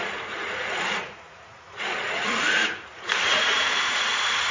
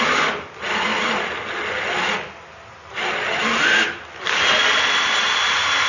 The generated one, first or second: first